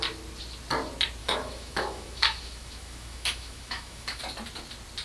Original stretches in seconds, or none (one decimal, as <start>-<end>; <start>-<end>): 0.0-1.2; 4.2-5.0